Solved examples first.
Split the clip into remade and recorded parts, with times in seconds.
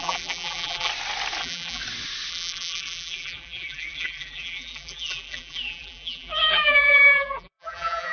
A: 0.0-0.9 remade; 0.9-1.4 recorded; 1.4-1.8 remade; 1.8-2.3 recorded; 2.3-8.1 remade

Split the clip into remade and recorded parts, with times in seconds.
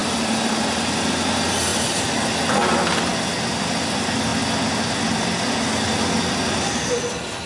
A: 0.0-0.5 remade; 0.5-1.7 recorded; 1.7-2.2 remade; 2.2-7.5 recorded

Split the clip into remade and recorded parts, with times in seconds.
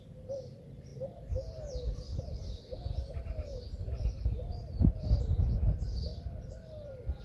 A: 0.0-0.9 recorded; 0.9-5.2 remade; 5.2-6.1 recorded; 6.1-7.2 remade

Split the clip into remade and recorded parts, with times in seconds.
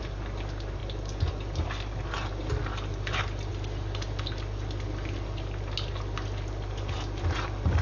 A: 0.0-7.8 recorded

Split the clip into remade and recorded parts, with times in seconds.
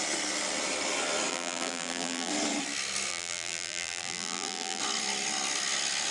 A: 0.0-1.3 recorded; 1.3-2.3 remade; 2.3-3.1 recorded; 3.1-4.8 remade; 4.8-6.1 recorded